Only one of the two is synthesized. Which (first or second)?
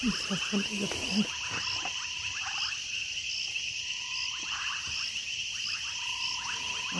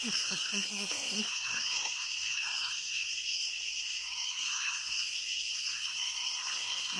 second